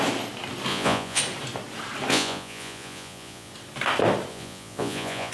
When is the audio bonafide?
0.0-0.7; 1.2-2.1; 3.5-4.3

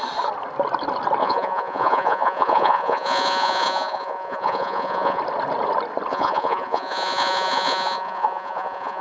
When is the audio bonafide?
0.0-1.2; 5.2-6.1

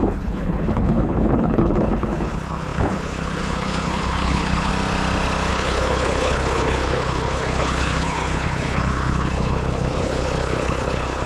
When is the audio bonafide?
4.7-5.5

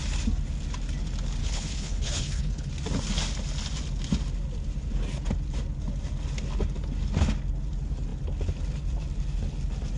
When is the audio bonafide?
0.0-1.4; 2.7-10.0

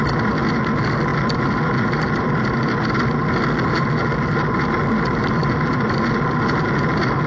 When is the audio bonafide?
0.0-7.3

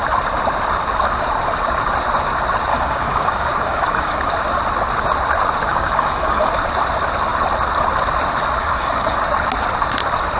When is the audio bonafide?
0.0-2.7; 4.3-5.7; 6.5-8.6; 9.2-10.4